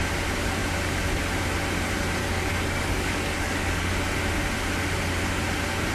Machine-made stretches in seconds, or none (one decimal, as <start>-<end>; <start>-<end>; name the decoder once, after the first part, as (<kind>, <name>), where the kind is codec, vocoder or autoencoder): 2.2-3.9 (codec, DAC)